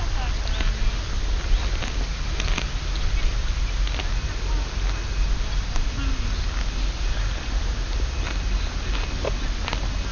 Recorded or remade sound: recorded